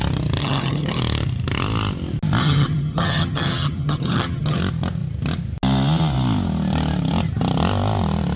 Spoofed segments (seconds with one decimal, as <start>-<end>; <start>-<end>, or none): 0.4-1.0; 2.4-4.6